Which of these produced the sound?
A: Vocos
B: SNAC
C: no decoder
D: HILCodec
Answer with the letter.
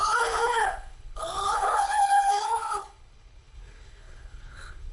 D